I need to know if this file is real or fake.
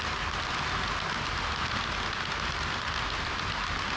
real